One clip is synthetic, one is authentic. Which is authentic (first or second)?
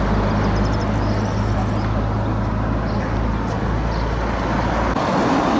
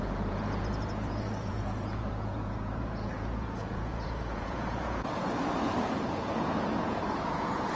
first